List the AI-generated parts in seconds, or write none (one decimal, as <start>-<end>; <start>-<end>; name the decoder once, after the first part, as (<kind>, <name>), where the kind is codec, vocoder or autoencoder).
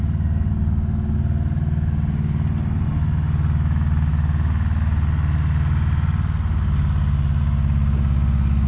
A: none